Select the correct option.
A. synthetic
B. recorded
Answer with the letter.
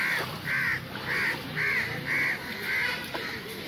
B